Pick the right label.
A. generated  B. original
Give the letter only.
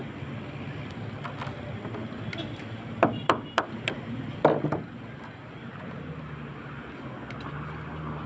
B